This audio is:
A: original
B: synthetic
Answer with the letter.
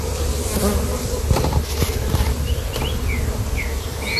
B